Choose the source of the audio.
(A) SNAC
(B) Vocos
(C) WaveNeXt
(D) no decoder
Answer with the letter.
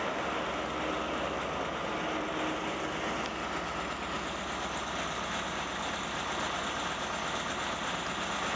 D